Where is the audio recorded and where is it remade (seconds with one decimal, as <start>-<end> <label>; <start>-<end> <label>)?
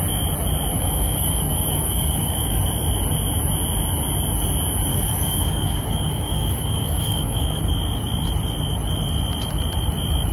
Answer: 0.0-0.7 recorded; 0.7-2.6 remade; 2.6-4.9 recorded; 4.9-7.6 remade; 7.6-10.3 recorded